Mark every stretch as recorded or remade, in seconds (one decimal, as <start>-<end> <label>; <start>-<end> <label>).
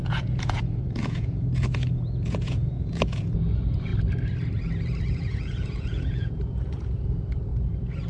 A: 0.0-3.9 remade; 3.9-5.1 recorded; 5.1-7.5 remade; 7.5-8.1 recorded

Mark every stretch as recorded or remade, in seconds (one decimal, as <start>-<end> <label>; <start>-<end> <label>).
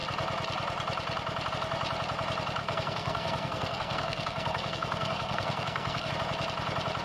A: 0.0-2.6 recorded; 2.6-6.1 remade; 6.1-7.0 recorded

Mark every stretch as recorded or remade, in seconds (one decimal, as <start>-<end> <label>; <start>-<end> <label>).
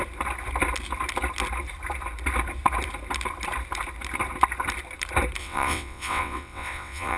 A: 0.0-5.4 recorded; 5.4-7.2 remade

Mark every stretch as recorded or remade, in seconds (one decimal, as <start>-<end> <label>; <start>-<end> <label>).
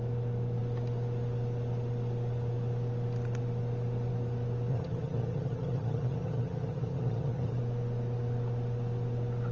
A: 0.0-4.7 recorded; 4.7-7.6 remade; 7.6-9.5 recorded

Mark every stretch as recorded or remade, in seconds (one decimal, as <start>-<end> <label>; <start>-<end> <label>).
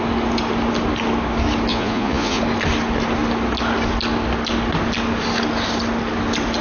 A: 0.0-1.7 recorded; 1.7-2.4 remade; 2.4-6.6 recorded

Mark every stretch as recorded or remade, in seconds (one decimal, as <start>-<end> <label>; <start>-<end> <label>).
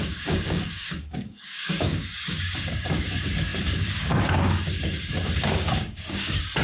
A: 0.0-6.6 remade